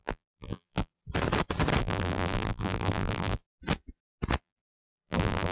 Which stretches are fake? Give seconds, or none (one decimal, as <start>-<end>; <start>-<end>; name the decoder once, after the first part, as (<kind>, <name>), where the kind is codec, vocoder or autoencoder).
0.0-0.9 (vocoder, BigVGAN v2); 1.8-3.4; 4.4-5.5